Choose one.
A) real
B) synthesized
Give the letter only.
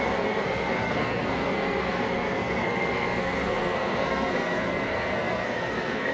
B